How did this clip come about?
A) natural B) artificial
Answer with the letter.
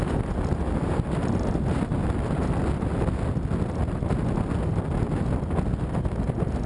A